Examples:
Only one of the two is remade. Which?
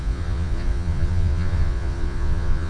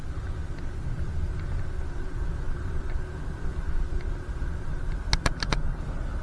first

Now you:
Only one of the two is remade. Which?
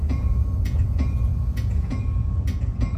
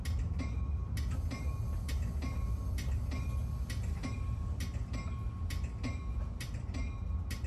first